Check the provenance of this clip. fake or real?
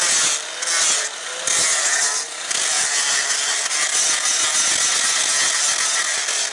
real